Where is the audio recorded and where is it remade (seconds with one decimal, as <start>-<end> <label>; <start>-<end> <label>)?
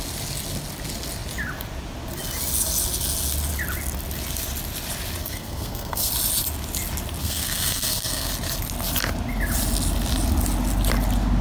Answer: 0.0-5.2 recorded; 5.2-6.1 remade; 6.1-7.2 recorded; 7.2-8.3 remade; 8.3-11.4 recorded